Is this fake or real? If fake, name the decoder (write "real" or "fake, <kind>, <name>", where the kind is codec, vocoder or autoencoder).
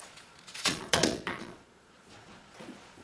fake, vocoder, Vocos